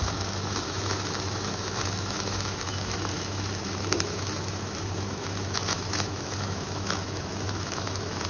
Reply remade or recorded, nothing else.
remade